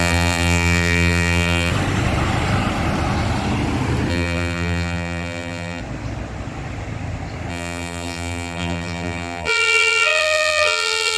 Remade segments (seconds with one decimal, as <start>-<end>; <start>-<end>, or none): 0.0-1.7; 4.1-5.8; 7.5-11.2